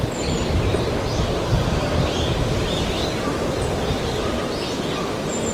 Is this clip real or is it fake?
real